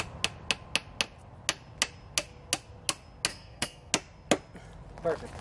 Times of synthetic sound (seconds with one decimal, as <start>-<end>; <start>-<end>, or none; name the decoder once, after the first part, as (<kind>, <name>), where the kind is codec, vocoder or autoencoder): 3.3-3.9 (codec, SNAC)

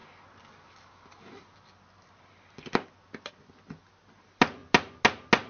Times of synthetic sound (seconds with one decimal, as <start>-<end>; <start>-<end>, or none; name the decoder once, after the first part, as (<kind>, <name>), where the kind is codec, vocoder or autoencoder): none